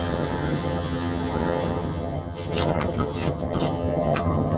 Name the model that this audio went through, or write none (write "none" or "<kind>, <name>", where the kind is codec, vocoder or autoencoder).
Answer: vocoder, HiFi-GAN